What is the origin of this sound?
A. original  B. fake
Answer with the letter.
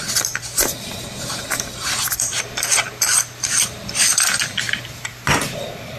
A